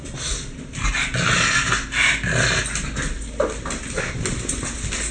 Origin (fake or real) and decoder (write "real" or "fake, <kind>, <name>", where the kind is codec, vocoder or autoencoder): real